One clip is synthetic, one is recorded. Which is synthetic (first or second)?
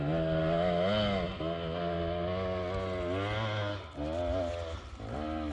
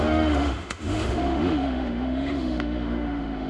second